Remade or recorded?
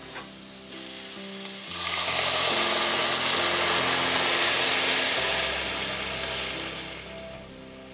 recorded